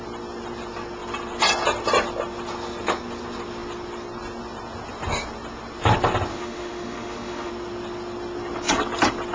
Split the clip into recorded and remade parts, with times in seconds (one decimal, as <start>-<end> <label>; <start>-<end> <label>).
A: 0.0-6.3 recorded; 6.3-7.5 remade; 7.5-9.3 recorded